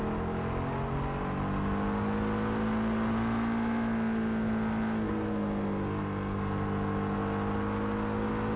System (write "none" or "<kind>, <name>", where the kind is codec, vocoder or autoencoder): none